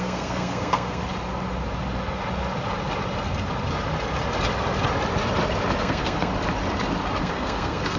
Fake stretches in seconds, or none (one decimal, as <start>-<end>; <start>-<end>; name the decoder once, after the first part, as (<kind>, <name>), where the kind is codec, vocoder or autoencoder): 0.0-1.0 (codec, SNAC); 5.8-6.3; 7.2-8.0